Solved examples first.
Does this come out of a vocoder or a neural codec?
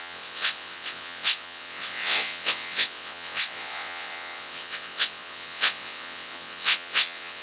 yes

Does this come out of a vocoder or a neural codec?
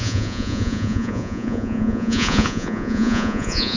yes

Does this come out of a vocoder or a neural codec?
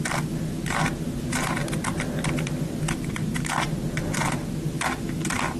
no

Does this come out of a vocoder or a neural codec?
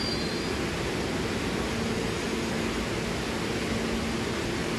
no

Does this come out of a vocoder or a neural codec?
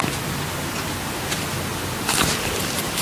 no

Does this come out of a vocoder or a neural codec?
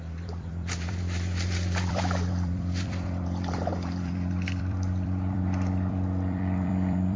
yes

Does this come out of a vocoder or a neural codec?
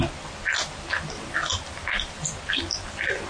no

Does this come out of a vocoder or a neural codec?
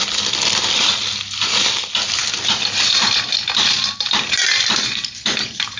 no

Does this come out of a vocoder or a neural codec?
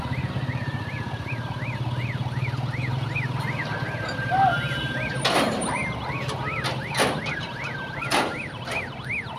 no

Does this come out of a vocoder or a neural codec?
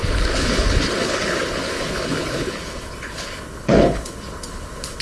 yes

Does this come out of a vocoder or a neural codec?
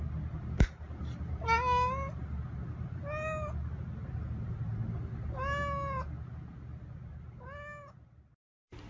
no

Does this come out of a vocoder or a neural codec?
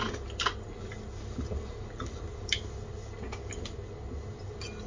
no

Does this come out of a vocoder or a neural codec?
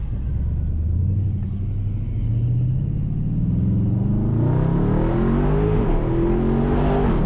no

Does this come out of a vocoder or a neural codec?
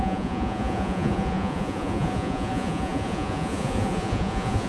yes